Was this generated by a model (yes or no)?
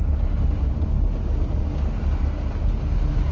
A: no